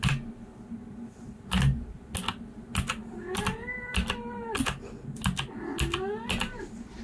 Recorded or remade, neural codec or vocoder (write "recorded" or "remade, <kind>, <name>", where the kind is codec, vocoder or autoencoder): recorded